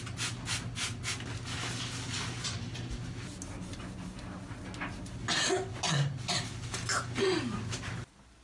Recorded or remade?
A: recorded